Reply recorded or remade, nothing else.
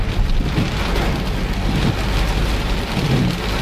recorded